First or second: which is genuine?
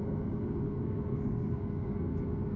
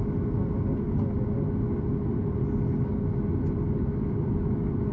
second